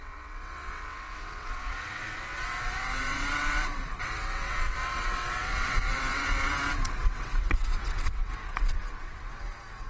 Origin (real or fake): fake